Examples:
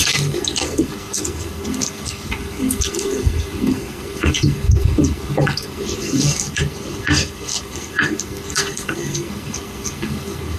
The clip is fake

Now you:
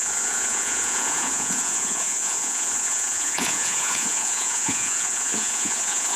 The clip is fake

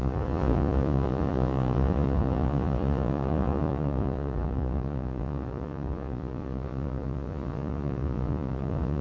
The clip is fake